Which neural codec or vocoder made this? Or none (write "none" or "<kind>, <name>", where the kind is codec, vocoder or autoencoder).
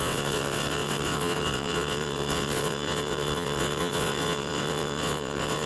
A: vocoder, WaveNeXt